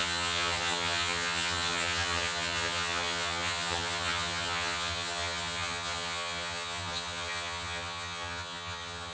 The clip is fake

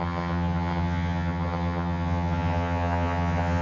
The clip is fake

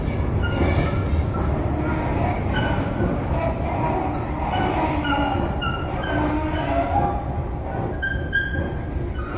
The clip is real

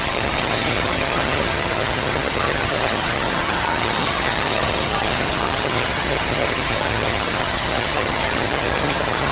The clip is fake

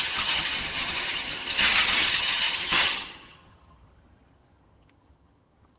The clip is fake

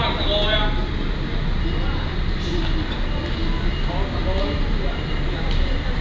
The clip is real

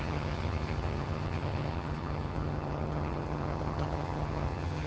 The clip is fake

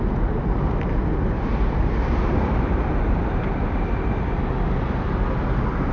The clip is real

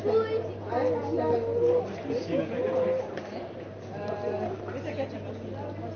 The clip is real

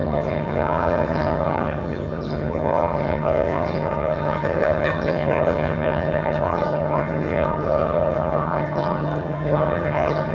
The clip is fake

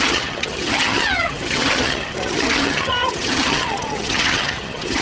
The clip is fake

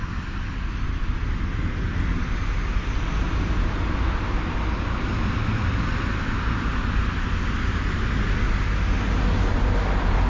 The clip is real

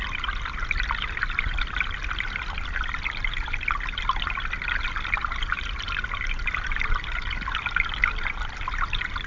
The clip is real